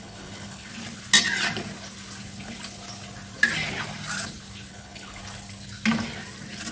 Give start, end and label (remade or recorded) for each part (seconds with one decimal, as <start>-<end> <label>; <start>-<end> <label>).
0.0-0.7 remade; 0.7-4.7 recorded; 4.7-5.2 remade; 5.2-6.7 recorded